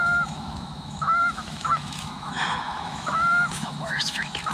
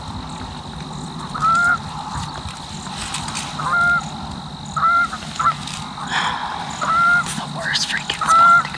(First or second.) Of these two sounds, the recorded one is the second